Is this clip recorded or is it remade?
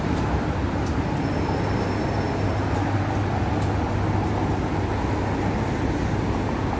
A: recorded